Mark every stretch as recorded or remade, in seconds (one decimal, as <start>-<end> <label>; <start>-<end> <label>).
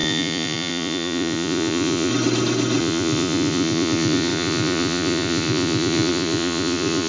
0.0-2.1 remade; 2.1-2.8 recorded; 2.8-7.1 remade